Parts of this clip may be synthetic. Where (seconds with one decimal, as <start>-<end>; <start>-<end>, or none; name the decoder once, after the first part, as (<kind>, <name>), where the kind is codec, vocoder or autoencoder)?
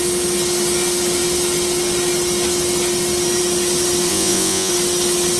4.1-4.7 (vocoder, Vocos)